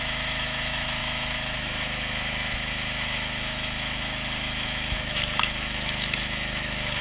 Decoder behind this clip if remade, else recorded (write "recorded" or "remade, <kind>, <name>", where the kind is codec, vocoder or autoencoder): remade, autoencoder, DAC-VAE